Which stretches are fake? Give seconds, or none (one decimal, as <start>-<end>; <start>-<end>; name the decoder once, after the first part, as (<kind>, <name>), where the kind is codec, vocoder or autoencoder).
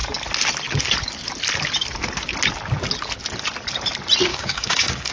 4.3-5.1 (codec, DAC)